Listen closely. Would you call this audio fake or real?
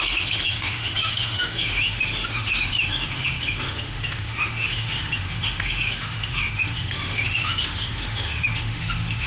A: fake